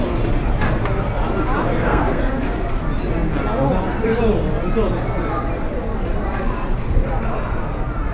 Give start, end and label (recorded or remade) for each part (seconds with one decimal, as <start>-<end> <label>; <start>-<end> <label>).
0.0-1.6 recorded; 1.6-2.2 remade; 2.2-8.1 recorded